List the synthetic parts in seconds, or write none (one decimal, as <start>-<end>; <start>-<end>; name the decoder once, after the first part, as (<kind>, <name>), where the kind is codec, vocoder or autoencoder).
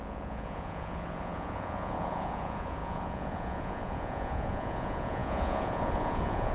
0.0-6.5 (vocoder, Vocos)